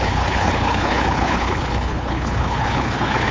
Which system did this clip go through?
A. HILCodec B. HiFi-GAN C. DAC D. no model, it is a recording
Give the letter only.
A